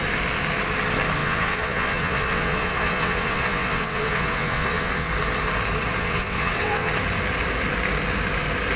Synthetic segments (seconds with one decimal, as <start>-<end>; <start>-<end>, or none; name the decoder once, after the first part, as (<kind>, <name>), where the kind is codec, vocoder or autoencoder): 1.2-5.1 (vocoder, WaveNeXt); 6.0-6.9